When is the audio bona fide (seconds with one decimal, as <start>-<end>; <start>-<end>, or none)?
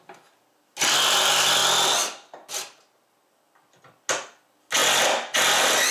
0.0-5.9